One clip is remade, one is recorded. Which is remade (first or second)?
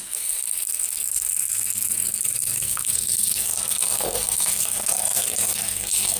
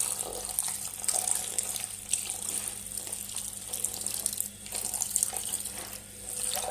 first